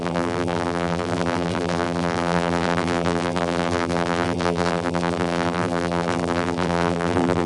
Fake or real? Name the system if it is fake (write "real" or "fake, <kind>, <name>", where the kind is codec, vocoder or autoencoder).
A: fake, vocoder, BigVGAN v2